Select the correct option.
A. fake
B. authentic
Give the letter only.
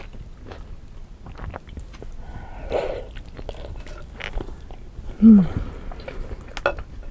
B